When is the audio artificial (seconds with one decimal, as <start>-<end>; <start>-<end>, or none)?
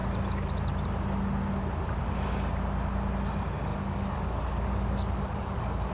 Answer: 3.7-5.9